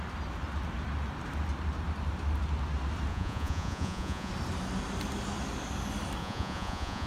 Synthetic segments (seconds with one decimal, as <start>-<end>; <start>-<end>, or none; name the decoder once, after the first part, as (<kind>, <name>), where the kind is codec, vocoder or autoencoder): 3.1-4.3 (vocoder, Vocos); 6.2-7.1